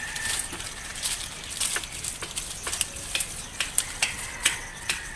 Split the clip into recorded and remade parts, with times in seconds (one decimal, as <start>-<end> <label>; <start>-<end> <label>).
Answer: 0.0-4.4 recorded; 4.4-5.2 remade